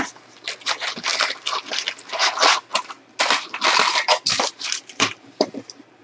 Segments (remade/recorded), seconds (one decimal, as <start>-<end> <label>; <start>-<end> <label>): 0.0-2.7 recorded; 2.7-6.0 remade